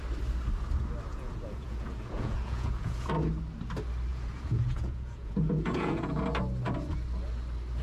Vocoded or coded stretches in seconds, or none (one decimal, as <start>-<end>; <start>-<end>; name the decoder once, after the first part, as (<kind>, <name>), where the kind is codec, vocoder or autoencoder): 1.1-3.1 (vocoder, Vocos); 4.1-6.2